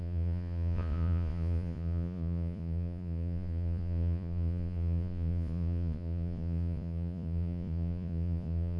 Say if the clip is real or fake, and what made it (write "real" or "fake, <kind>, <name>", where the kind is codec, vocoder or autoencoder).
fake, vocoder, Vocos